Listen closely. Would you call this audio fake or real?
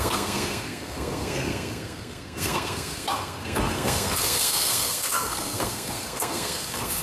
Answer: fake